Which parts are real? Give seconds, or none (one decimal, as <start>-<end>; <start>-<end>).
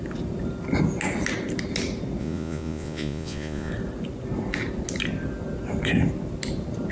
0.0-2.2; 3.7-6.9